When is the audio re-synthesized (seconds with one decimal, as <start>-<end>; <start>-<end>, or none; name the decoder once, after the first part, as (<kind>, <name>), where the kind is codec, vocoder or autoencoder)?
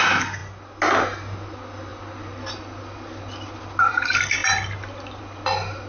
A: none